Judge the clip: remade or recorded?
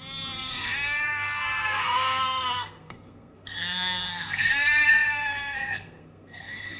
remade